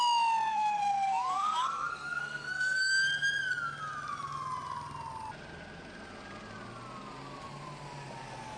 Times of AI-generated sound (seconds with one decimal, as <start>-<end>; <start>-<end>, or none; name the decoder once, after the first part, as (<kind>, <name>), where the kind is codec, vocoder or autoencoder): 0.5-2.9 (codec, SNAC)